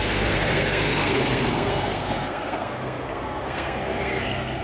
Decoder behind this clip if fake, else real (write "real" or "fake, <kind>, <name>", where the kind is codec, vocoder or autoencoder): fake, codec, SNAC